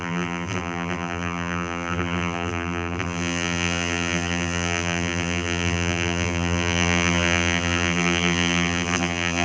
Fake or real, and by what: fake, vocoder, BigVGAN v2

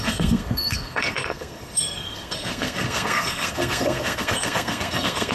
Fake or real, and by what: fake, codec, SNAC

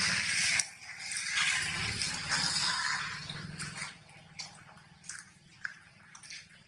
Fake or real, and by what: real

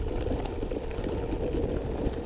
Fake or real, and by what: real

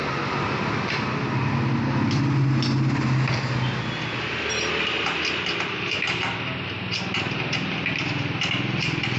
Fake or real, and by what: real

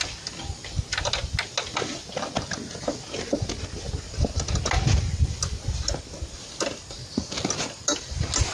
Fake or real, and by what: real